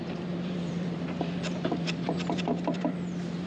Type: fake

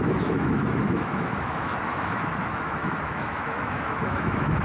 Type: fake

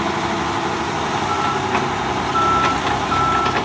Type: real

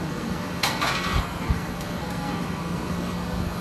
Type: fake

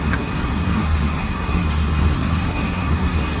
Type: fake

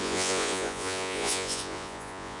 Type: fake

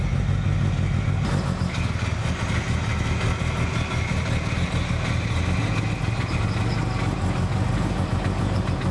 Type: real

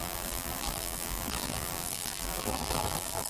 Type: fake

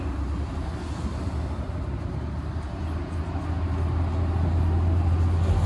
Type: real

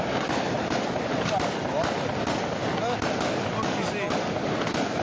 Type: real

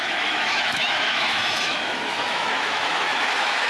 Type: fake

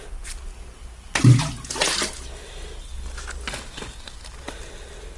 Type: real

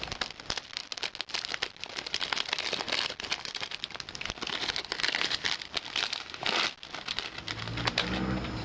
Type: real